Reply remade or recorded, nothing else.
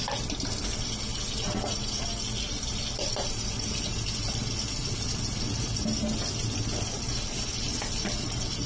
recorded